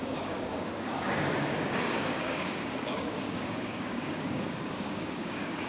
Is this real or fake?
fake